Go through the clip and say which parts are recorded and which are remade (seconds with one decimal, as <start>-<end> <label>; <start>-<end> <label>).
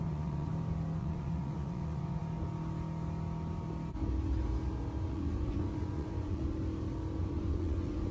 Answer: 0.0-0.5 remade; 0.5-1.0 recorded; 1.0-2.2 remade; 2.2-5.1 recorded; 5.1-6.5 remade; 6.5-7.2 recorded; 7.2-8.1 remade